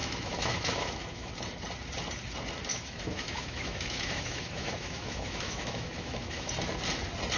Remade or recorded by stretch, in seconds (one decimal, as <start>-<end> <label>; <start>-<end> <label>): 0.0-1.3 remade; 1.3-2.7 recorded; 2.7-6.5 remade; 6.5-7.4 recorded